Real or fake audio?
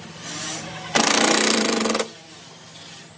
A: real